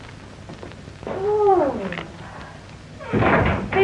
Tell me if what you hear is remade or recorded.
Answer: recorded